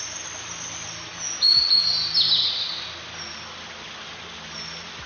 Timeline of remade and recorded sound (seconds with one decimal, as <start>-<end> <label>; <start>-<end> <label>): 0.0-5.1 recorded